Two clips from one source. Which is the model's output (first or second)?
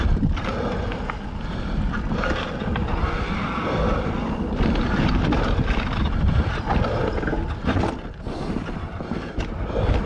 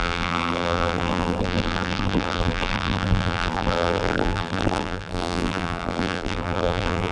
second